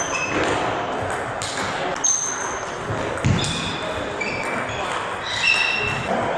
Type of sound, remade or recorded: recorded